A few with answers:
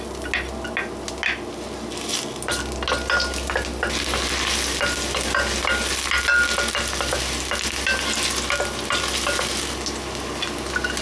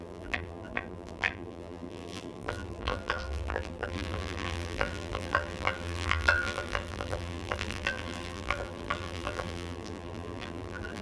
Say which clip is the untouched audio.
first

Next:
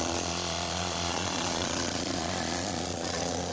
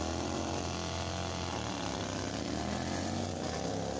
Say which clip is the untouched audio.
second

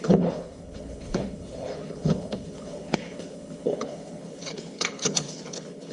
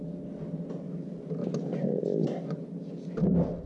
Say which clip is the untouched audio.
second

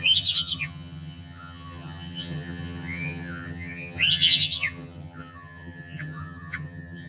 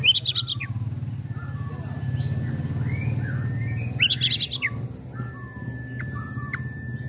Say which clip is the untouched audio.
second